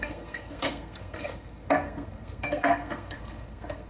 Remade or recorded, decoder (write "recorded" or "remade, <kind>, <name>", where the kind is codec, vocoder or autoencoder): remade, codec, SNAC